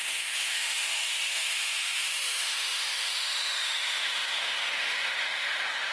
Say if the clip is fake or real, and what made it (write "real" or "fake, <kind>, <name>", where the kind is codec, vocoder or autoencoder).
fake, autoencoder, DAC-VAE